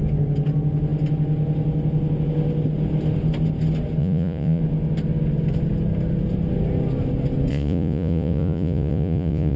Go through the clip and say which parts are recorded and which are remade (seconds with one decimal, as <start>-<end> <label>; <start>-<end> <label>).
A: 0.0-4.0 recorded; 4.0-4.6 remade; 4.6-7.5 recorded; 7.5-9.6 remade